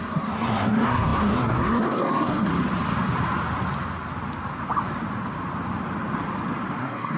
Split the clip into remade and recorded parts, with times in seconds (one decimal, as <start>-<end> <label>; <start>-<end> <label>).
0.0-2.5 remade; 2.5-6.8 recorded; 6.8-7.2 remade